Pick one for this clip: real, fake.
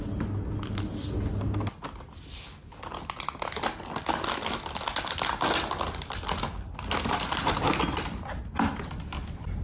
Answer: real